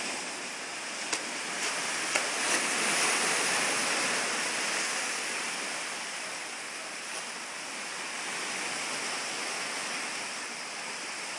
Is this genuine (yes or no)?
yes